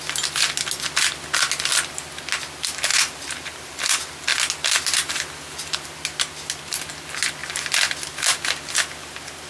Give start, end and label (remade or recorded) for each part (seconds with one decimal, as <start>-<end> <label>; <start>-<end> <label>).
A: 0.0-2.9 recorded; 2.9-3.8 remade; 3.8-9.5 recorded